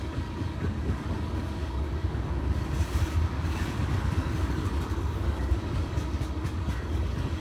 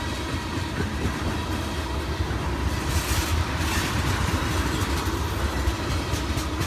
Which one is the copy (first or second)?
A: first